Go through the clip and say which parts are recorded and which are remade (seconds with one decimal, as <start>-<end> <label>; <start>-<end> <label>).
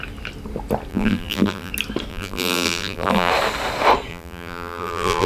0.0-0.9 recorded; 0.9-1.7 remade; 1.7-2.1 recorded; 2.1-3.3 remade; 3.3-4.1 recorded; 4.1-5.3 remade